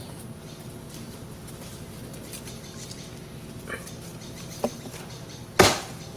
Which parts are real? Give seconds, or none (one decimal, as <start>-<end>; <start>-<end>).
0.0-6.2

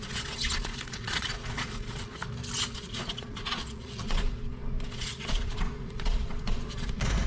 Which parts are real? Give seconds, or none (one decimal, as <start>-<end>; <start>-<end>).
2.2-2.7

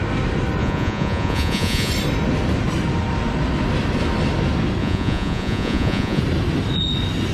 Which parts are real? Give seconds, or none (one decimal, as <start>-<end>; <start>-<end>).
0.0-0.6; 1.9-4.8; 6.2-7.3

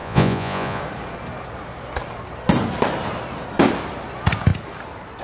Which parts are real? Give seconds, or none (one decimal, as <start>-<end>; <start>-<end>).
0.8-5.2

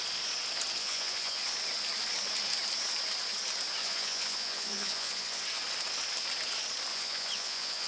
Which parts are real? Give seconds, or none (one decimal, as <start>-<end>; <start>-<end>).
0.0-0.8; 1.4-3.8; 5.4-6.9

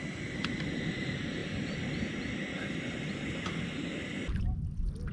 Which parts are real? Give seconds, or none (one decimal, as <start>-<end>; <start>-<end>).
0.0-5.1